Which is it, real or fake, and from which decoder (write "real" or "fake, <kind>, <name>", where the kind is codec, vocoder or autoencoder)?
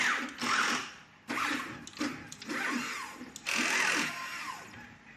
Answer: real